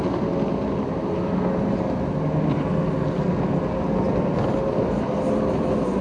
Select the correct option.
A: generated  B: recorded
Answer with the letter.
B